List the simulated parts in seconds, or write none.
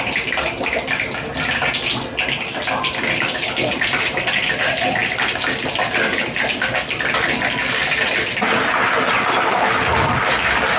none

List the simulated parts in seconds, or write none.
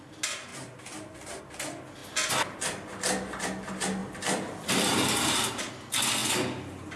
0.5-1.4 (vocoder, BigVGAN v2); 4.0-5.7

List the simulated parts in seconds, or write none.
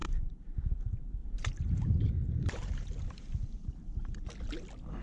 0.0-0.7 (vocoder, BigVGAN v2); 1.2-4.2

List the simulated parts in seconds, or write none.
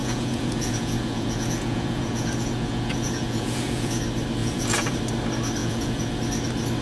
0.0-4.0 (vocoder, Vocos); 4.4-5.0; 5.6-6.1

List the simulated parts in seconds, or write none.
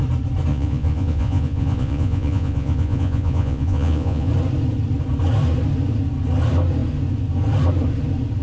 0.5-4.3 (vocoder, Vocos)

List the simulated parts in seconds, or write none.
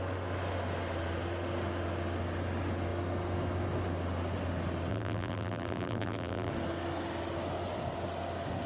4.9-6.5 (vocoder, BigVGAN v2)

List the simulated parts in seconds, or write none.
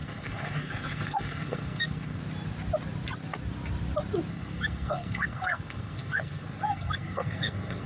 0.0-2.2 (codec, SNAC); 4.3-7.9